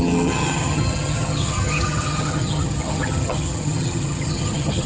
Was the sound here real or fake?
fake